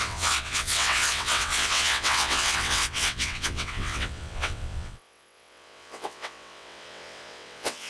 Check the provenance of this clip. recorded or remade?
remade